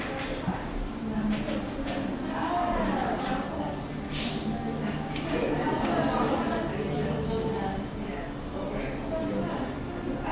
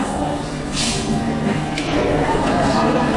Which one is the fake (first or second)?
second